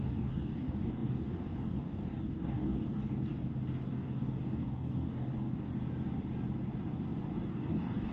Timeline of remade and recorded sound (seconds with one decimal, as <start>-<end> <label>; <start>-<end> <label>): 0.0-3.3 remade; 3.3-3.9 recorded; 3.9-5.7 remade; 5.7-7.5 recorded; 7.5-8.1 remade